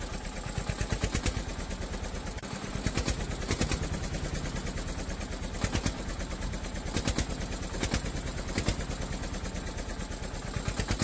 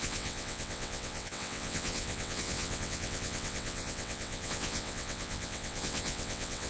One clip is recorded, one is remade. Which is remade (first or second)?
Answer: second